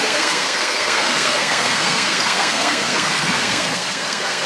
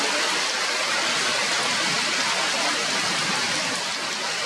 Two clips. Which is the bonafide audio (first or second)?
second